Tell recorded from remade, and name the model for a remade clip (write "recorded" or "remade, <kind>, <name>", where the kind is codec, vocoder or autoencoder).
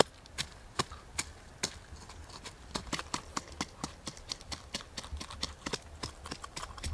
recorded